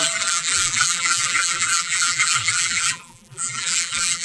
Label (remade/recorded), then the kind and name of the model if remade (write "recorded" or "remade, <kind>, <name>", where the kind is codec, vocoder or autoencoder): remade, vocoder, BigVGAN v2